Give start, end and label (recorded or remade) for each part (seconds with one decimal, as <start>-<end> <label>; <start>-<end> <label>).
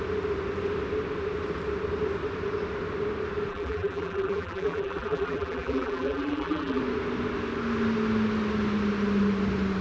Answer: 0.0-3.5 recorded; 3.5-6.8 remade; 6.8-9.8 recorded